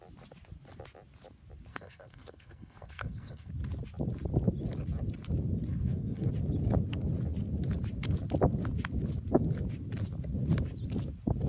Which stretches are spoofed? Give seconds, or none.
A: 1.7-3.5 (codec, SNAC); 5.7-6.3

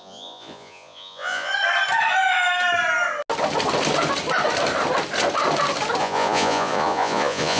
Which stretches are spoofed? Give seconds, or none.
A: 0.0-1.5 (vocoder, Vocos); 6.0-7.6

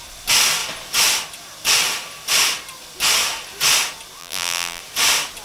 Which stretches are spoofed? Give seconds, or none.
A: 4.2-4.8 (vocoder, BigVGAN v2)

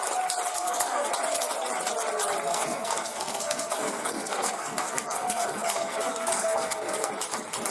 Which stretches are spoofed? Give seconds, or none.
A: 0.5-1.1 (codec, SNAC); 2.5-7.1